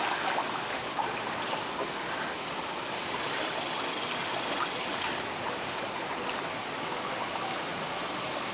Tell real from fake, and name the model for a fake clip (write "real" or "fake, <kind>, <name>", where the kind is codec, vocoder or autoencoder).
real